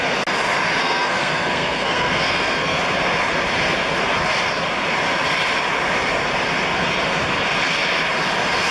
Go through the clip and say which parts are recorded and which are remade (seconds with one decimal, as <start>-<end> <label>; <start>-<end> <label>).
0.0-0.8 recorded; 0.8-2.8 remade; 2.8-8.7 recorded